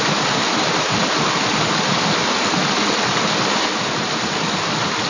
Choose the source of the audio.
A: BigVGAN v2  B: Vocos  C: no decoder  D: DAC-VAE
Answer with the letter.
C